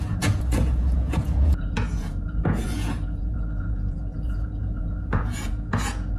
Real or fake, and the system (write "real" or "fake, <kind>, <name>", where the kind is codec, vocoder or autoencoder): fake, vocoder, Vocos